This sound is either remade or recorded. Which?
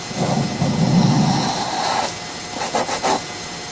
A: recorded